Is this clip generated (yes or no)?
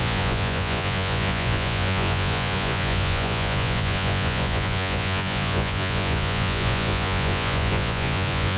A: yes